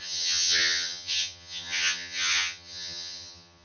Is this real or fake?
fake